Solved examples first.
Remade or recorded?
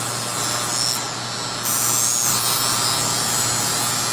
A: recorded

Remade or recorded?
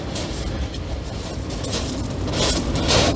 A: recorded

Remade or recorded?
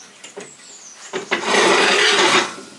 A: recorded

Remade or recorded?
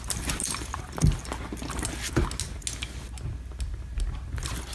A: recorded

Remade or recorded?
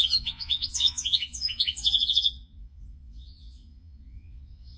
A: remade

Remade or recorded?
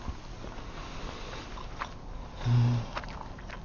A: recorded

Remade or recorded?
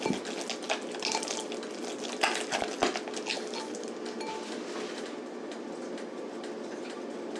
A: recorded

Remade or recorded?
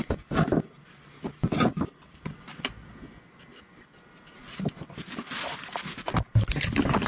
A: recorded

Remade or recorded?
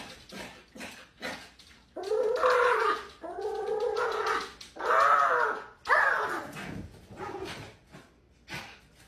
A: recorded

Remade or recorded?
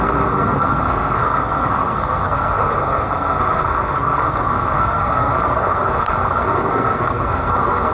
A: remade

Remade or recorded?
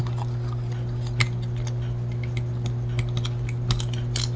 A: recorded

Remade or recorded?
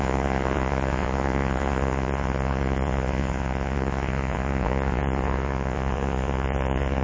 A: remade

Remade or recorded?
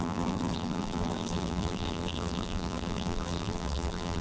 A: remade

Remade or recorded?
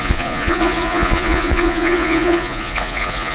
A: remade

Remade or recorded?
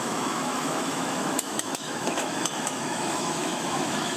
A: remade